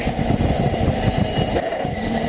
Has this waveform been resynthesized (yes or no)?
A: no